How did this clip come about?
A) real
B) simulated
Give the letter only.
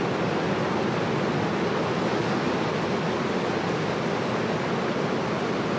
A